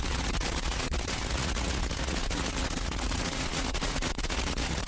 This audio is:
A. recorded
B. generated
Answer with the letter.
B